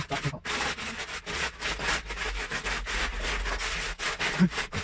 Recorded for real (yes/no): yes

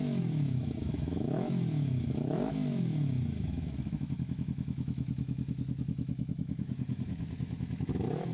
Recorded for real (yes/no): no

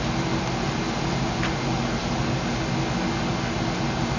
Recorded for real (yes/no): yes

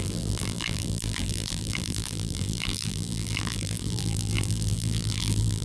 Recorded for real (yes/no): no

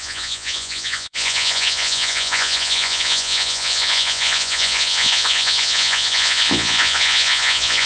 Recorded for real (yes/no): no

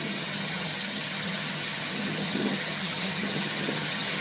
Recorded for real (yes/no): no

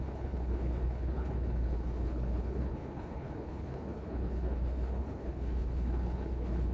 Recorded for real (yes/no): no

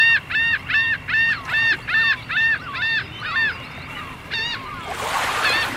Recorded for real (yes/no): no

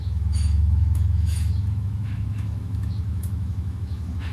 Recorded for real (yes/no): no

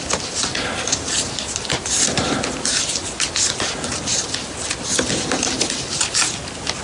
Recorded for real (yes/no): yes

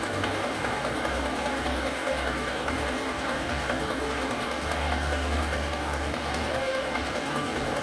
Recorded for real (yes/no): no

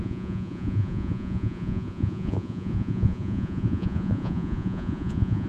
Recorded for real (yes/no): no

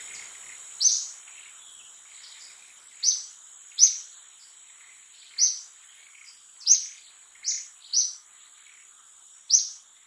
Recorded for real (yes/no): yes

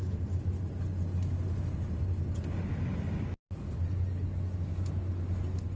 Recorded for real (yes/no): yes